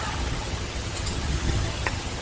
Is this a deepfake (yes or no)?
yes